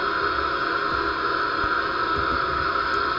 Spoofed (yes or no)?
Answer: no